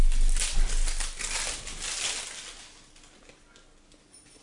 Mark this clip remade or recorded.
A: recorded